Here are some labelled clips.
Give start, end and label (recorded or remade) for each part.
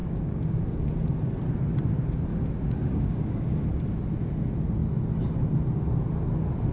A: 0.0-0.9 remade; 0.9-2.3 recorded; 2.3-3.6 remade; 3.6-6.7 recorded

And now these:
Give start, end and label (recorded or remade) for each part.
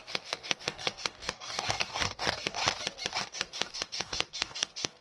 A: 0.0-2.6 remade; 2.6-3.2 recorded; 3.2-5.0 remade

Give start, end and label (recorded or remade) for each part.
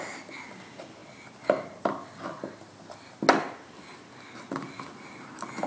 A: 0.0-5.7 recorded